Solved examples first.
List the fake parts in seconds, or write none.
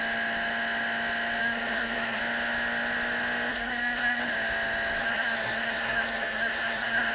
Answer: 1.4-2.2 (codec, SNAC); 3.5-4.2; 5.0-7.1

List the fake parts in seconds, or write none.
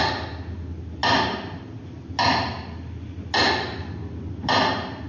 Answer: none